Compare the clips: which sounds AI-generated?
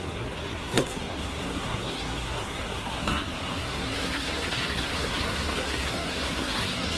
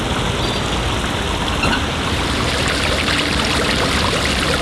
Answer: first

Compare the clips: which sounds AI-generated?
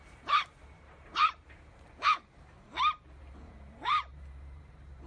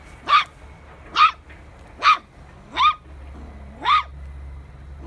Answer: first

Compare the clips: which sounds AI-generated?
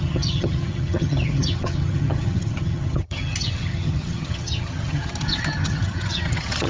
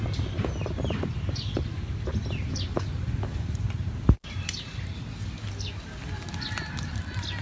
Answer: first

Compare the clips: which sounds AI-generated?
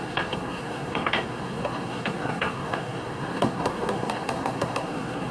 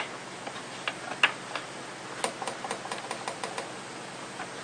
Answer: first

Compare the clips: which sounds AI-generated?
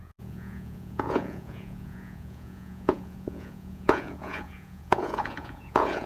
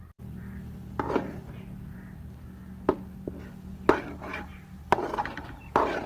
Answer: first